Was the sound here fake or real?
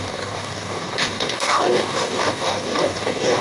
fake